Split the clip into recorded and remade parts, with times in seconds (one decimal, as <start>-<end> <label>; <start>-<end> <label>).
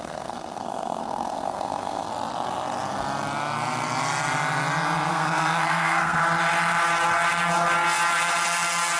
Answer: 0.0-2.1 remade; 2.1-5.1 recorded; 5.1-6.2 remade; 6.2-9.0 recorded